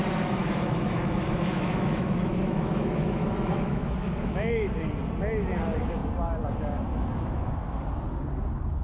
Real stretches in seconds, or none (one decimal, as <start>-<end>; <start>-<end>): 0.0-0.4; 4.7-6.9; 7.5-8.8